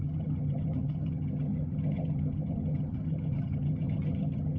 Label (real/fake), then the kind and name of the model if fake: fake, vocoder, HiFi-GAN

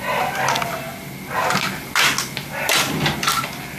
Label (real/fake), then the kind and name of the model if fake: real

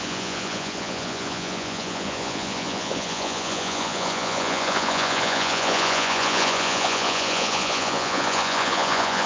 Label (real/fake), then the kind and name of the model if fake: fake, vocoder, Vocos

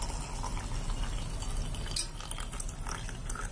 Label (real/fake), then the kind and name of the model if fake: real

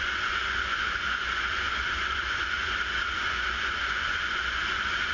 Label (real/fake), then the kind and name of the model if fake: fake, vocoder, Vocos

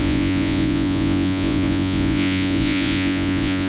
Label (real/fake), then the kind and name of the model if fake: fake, vocoder, Vocos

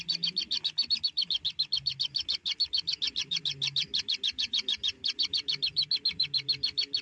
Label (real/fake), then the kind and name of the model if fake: real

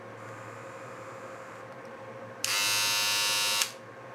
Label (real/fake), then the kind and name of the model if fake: real